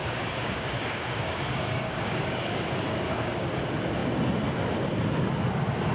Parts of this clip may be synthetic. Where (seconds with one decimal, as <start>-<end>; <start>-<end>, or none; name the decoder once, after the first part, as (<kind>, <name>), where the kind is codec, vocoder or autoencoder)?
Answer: 0.0-3.5 (codec, DAC)